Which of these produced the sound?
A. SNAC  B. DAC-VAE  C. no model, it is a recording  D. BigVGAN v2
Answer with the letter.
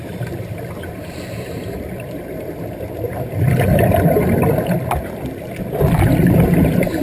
C